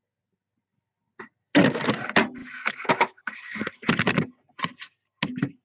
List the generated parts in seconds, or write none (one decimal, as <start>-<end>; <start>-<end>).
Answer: 2.4-3.2